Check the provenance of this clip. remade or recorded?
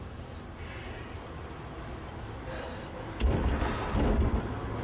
recorded